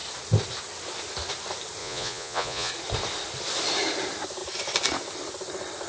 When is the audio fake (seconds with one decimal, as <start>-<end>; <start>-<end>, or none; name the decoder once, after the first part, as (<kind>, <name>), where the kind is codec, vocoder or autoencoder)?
1.8-2.7 (vocoder, Vocos)